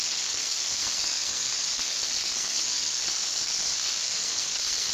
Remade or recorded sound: remade